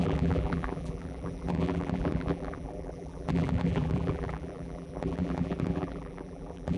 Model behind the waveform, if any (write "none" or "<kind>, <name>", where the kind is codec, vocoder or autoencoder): vocoder, BigVGAN v2